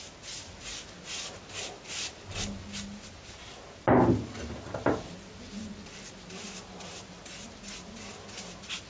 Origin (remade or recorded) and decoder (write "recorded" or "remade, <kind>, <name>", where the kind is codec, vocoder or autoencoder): recorded